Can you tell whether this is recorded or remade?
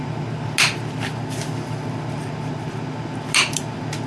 recorded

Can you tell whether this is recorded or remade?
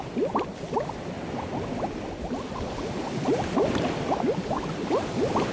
recorded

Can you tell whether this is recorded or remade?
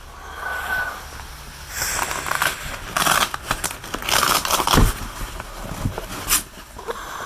recorded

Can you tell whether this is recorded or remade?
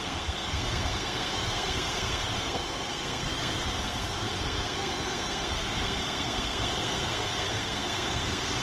remade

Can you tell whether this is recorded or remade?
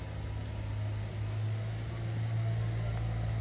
recorded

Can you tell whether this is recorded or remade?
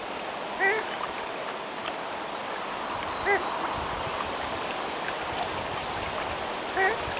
recorded